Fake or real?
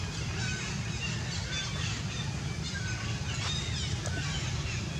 real